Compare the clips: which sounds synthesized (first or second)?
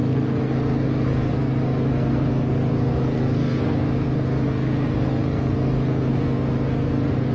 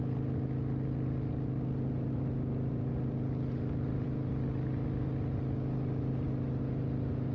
first